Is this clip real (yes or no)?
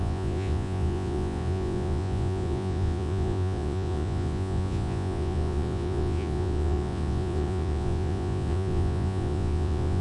no